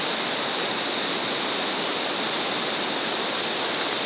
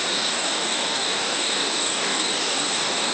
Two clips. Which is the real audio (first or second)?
first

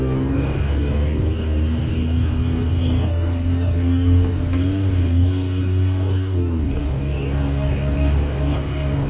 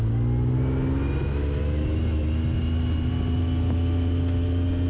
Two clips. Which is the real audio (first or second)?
second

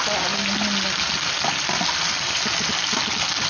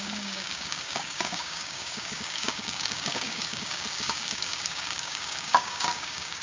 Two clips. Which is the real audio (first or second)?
first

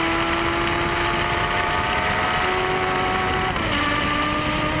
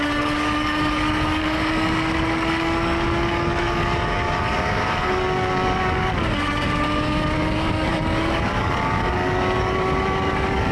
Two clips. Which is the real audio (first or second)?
first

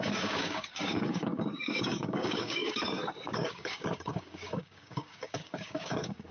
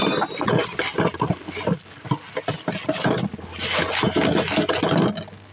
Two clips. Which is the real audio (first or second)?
second